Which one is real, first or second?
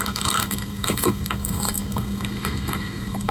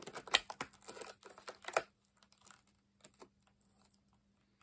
second